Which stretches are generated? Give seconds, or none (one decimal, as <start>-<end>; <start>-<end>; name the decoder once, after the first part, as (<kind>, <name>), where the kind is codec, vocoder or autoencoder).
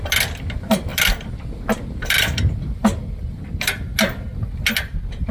none